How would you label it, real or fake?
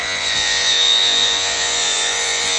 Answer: fake